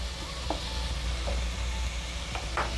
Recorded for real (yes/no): yes